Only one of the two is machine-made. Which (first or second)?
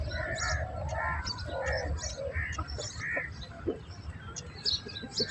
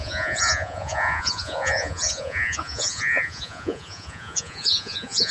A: second